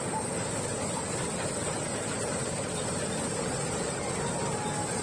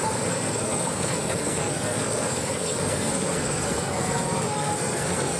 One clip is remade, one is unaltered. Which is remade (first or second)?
second